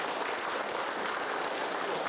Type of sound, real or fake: real